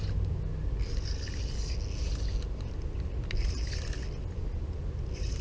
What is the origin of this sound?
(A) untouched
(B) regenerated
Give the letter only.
A